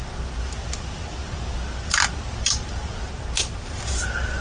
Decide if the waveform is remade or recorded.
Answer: recorded